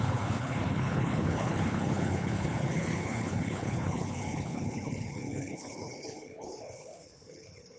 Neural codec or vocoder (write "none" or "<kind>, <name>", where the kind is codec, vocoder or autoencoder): codec, HILCodec